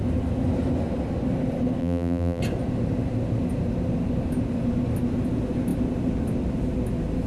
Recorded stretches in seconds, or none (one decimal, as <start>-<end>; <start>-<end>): 0.0-1.8; 2.4-7.3